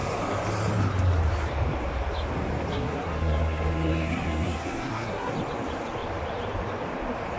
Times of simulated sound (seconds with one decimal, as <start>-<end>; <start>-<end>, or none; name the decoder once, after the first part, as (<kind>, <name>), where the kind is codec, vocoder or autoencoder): 2.7-5.3 (codec, SNAC)